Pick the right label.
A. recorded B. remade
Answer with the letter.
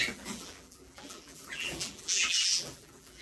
B